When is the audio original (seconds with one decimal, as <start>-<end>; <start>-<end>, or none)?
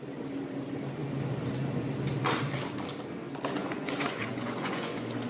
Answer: 0.0-3.6